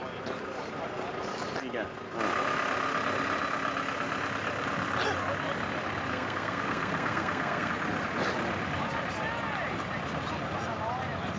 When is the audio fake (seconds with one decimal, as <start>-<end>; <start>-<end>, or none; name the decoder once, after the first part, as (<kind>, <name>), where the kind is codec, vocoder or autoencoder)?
6.1-7.7 (codec, SNAC)